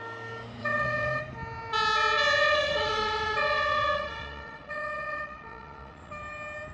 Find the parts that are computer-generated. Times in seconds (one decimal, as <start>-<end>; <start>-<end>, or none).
0.6-1.2; 2.4-6.1